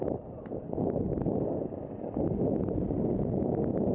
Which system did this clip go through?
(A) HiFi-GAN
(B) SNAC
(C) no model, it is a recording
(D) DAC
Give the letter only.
C